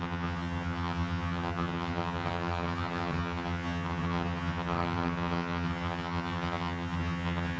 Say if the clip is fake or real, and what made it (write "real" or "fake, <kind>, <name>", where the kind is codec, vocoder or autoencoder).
fake, vocoder, HiFi-GAN